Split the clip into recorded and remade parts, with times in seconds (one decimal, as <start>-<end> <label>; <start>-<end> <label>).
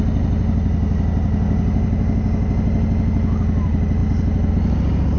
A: 0.0-5.2 recorded